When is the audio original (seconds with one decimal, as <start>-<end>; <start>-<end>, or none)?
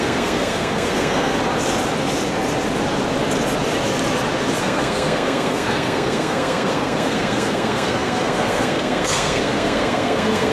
1.3-4.6